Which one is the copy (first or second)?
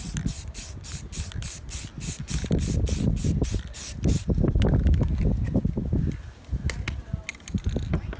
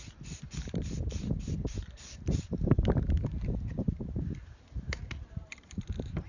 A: second